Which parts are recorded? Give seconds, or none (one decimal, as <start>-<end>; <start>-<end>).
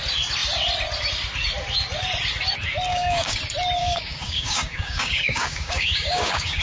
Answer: 0.0-2.9; 3.4-3.8